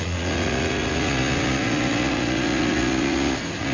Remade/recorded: remade